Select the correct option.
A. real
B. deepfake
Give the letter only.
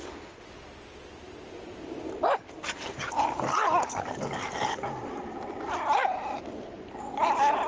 A